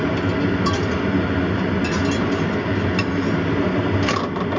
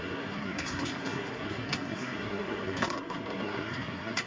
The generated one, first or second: second